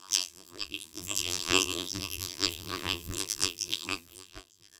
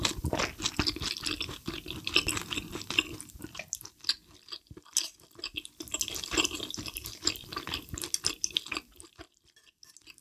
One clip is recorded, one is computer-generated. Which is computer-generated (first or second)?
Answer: first